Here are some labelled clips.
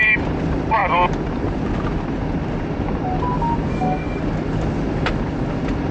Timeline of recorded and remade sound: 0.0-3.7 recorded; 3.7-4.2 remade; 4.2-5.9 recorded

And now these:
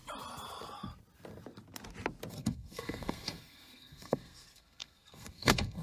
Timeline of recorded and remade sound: 0.0-2.3 recorded; 2.3-5.8 remade